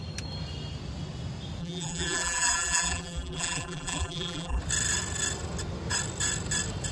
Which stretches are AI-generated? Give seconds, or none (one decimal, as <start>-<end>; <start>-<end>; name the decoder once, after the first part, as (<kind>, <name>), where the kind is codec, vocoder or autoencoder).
1.6-4.6 (vocoder, BigVGAN v2)